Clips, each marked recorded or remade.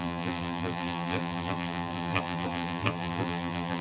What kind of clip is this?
remade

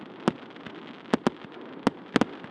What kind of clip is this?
recorded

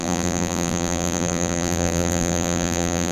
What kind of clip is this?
remade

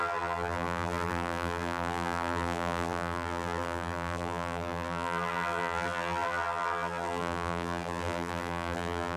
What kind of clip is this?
remade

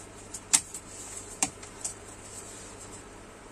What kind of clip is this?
remade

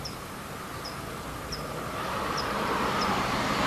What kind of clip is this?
recorded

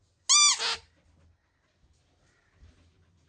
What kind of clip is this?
recorded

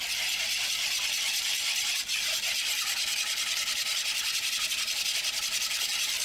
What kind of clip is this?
recorded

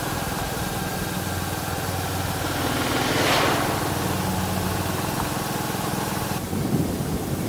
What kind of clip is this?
recorded